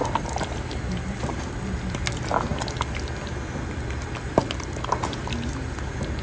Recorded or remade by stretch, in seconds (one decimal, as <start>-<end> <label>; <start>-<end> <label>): 0.0-6.2 recorded